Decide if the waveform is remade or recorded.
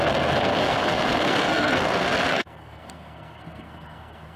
remade